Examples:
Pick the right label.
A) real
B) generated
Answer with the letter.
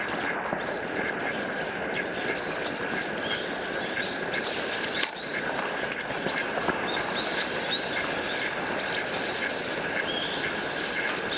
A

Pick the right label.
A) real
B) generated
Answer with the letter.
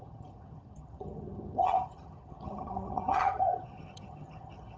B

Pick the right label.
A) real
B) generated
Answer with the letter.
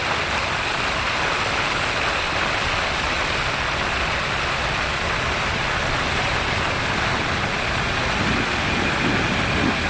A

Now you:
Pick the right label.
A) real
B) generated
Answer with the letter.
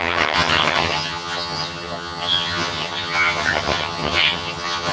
B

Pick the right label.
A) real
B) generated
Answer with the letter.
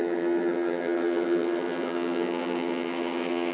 B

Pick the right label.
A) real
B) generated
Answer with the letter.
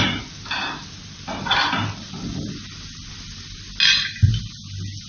A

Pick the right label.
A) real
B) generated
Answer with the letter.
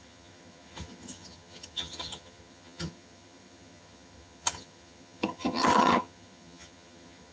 B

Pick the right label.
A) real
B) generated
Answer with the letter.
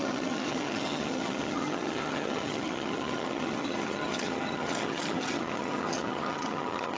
B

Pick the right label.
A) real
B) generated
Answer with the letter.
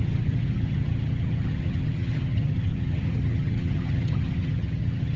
B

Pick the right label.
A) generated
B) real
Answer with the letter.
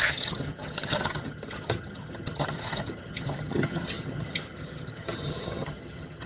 A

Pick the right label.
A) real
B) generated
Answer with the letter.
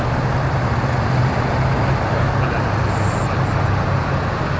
A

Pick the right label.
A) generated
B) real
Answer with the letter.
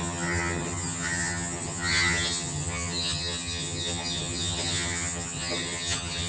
A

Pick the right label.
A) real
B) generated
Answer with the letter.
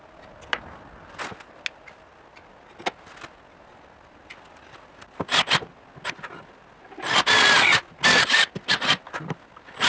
A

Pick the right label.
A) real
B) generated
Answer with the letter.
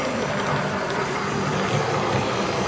A